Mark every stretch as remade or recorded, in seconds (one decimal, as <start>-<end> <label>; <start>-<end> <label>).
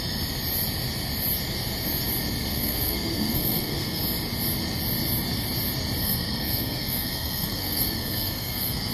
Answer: 0.0-2.5 recorded; 2.5-4.0 remade; 4.0-6.0 recorded; 6.0-8.9 remade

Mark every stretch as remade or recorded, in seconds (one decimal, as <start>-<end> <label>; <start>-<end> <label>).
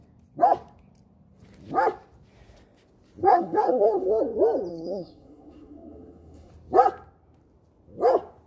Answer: 0.0-3.2 recorded; 3.2-4.2 remade; 4.2-4.7 recorded; 4.7-6.5 remade; 6.5-8.5 recorded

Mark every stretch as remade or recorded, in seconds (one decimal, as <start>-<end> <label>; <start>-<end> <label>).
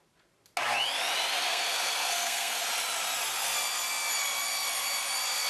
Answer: 0.0-1.5 recorded; 1.5-2.6 remade; 2.6-5.5 recorded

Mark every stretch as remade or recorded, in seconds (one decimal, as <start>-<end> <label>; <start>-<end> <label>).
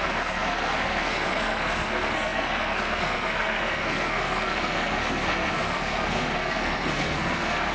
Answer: 0.0-7.7 remade